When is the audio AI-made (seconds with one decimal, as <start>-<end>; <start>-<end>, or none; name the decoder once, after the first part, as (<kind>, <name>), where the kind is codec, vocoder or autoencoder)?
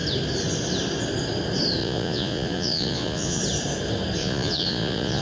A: 1.8-3.4 (vocoder, Vocos); 4.2-5.2